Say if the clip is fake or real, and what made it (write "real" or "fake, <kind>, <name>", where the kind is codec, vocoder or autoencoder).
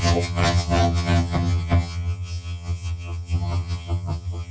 fake, vocoder, HiFi-GAN